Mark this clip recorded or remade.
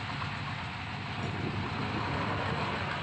recorded